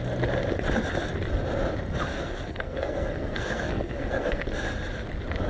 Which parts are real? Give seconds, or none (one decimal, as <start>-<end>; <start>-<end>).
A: 0.0-2.1; 4.4-5.5